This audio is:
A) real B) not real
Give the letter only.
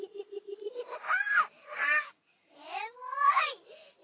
A